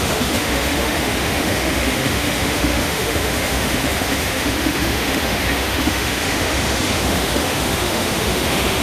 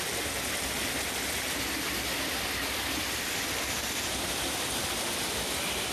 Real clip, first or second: second